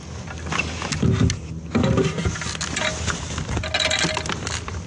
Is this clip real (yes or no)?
yes